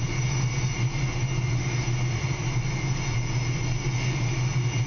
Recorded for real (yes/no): yes